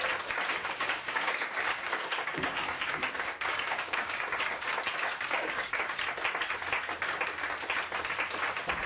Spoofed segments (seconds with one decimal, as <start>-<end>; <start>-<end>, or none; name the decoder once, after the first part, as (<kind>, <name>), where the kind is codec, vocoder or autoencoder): 0.6-5.8 (codec, DAC)